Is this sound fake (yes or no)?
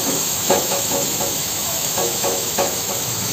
yes